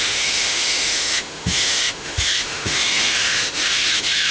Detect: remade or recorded remade